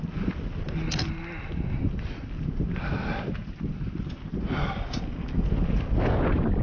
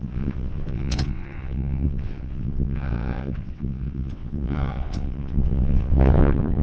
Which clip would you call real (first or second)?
first